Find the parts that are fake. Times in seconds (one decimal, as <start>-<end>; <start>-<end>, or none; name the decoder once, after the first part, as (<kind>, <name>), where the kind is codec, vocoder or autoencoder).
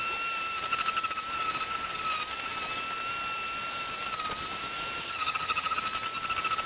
5.0-5.8 (vocoder, HiFi-GAN)